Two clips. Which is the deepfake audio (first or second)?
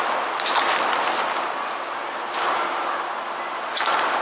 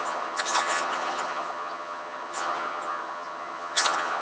second